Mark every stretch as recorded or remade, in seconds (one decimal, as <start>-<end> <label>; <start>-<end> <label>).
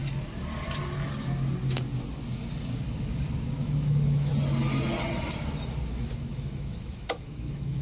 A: 0.0-3.6 recorded; 3.6-4.3 remade; 4.3-5.9 recorded; 5.9-7.8 remade